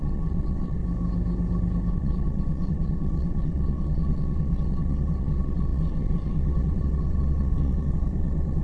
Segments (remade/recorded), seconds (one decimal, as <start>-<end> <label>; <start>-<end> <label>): 0.0-0.8 remade; 0.8-1.9 recorded; 1.9-8.6 remade

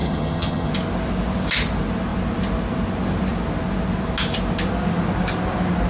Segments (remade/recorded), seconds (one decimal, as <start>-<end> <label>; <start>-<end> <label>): 0.0-0.7 remade; 0.7-5.9 recorded

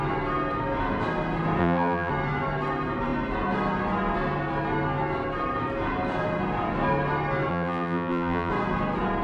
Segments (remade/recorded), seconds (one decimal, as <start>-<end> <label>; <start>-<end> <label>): 0.0-1.6 recorded; 1.6-2.1 remade; 2.1-7.5 recorded; 7.5-8.5 remade; 8.5-9.2 recorded

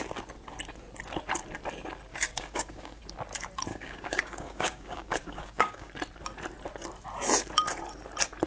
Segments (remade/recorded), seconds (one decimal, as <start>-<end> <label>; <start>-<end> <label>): 0.0-2.1 recorded; 2.1-3.0 remade; 3.0-3.7 recorded; 3.7-5.9 remade; 5.9-8.5 recorded

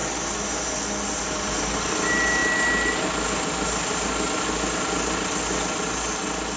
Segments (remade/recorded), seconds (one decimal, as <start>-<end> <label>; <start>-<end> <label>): 0.0-6.6 recorded